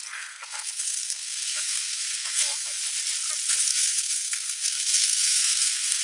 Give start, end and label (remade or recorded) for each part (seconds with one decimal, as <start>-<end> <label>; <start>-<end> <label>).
0.0-2.8 remade; 2.8-3.7 recorded; 3.7-6.0 remade